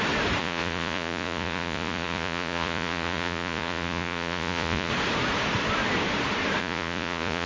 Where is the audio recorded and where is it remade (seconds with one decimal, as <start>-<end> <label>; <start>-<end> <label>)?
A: 0.0-0.4 recorded; 0.4-4.9 remade; 4.9-6.6 recorded; 6.6-7.5 remade